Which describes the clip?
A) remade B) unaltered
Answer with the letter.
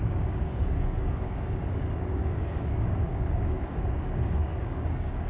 A